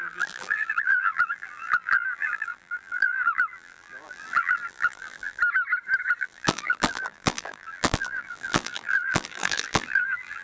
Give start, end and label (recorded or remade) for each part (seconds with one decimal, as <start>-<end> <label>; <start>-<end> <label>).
0.0-5.4 remade; 5.4-6.2 recorded; 6.2-10.4 remade